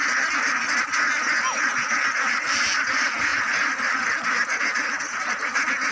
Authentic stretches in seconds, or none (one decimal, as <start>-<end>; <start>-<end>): 0.0-5.9